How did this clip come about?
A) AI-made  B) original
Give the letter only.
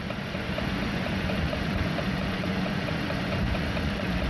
A